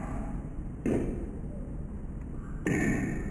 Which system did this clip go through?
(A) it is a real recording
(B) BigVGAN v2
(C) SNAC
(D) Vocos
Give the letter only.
A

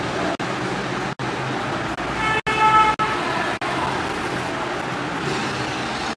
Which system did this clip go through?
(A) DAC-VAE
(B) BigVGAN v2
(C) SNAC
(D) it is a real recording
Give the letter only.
D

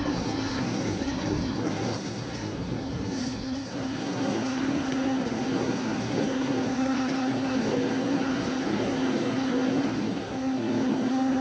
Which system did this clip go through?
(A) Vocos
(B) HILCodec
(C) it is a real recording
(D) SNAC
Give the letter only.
D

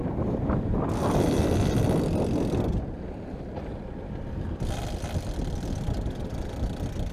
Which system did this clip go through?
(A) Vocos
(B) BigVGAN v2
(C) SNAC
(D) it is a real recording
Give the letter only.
D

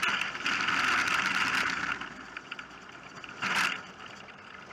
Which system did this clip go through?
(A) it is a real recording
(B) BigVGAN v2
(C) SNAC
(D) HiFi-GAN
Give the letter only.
B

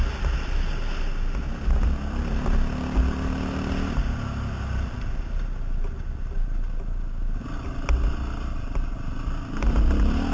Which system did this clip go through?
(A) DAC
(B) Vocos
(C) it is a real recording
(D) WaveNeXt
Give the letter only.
C